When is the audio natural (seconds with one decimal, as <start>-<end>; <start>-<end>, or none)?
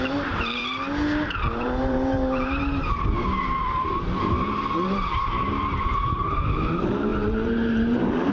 2.9-3.4